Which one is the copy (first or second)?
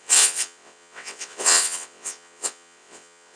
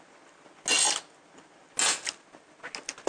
first